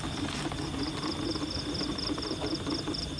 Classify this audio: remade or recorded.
recorded